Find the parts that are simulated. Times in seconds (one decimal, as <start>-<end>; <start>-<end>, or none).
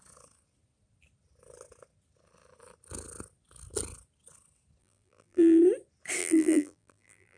4.8-5.6; 6.2-7.4